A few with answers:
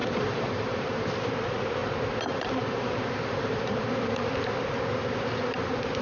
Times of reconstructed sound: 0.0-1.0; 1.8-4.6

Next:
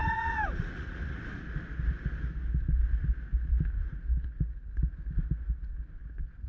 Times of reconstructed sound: 0.0-1.2

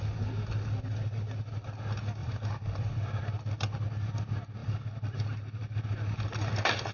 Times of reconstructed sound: 2.2-3.2; 4.6-5.8

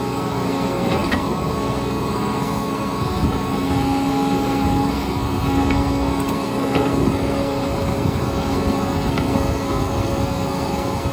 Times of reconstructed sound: 0.0-11.1

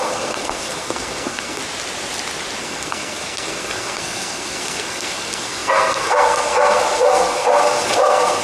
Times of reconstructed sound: 0.0-1.6; 2.6-8.4

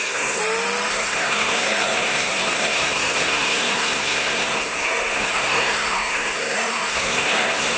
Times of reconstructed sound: 0.0-0.4; 0.9-7.8

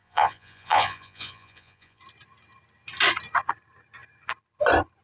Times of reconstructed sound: 0.0-2.0